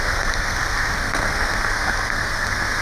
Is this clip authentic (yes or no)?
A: no